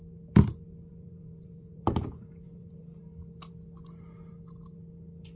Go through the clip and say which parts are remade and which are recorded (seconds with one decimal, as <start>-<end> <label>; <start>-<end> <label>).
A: 0.0-0.9 recorded; 0.9-3.1 remade; 3.1-5.4 recorded